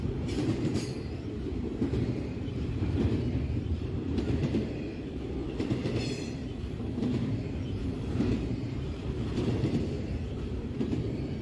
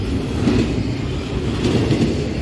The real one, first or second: second